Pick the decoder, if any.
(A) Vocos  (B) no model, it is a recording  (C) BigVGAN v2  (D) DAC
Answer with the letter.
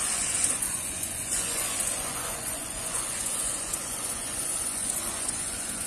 A